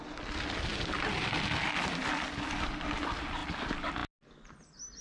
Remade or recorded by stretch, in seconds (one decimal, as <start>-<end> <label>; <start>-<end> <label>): 0.0-5.0 recorded